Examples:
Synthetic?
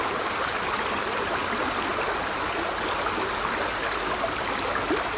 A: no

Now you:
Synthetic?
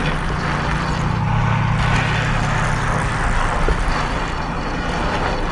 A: no